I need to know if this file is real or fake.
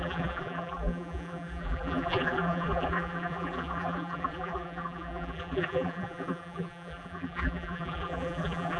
fake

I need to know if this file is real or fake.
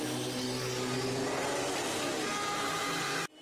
real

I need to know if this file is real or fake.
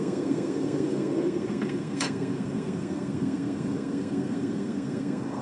fake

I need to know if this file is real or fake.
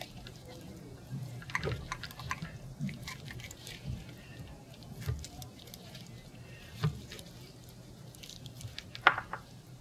fake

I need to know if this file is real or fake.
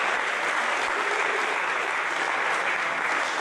real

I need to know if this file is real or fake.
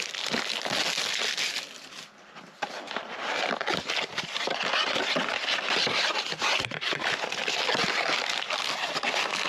real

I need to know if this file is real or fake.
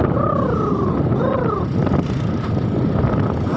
real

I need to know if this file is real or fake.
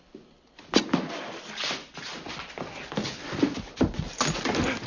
real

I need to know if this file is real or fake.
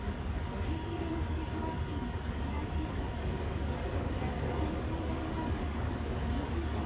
fake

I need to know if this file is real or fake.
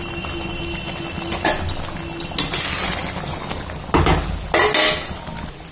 real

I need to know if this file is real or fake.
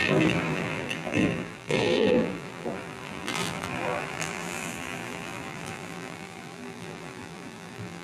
fake